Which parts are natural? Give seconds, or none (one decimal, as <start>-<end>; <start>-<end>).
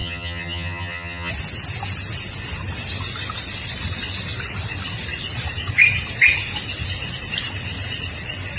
1.3-8.6